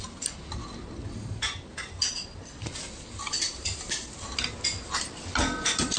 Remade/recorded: recorded